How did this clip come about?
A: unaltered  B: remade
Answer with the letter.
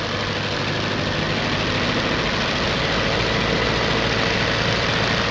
A